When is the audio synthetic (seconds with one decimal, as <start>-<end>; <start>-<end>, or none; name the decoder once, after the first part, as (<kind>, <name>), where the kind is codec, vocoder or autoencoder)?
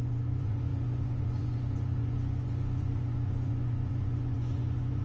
0.0-5.0 (vocoder, Vocos)